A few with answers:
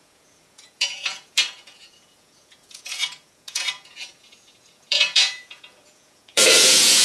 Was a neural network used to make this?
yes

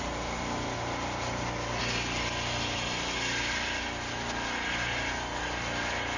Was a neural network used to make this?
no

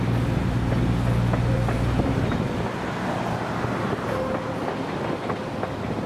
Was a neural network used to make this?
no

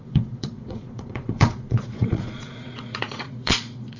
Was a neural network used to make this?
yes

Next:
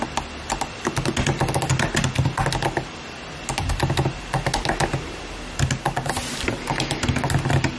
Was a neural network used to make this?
no